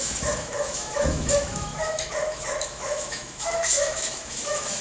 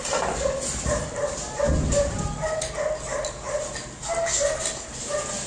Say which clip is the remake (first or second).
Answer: first